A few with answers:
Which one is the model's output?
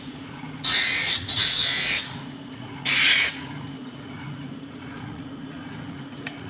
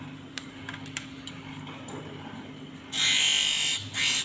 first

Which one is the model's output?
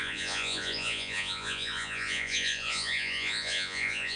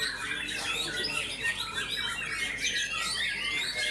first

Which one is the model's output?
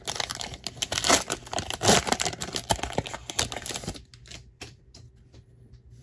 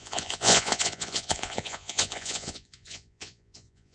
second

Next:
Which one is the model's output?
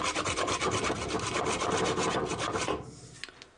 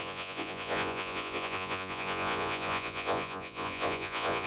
second